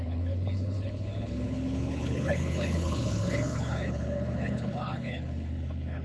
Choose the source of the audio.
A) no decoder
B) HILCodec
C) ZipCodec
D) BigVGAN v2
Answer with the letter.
B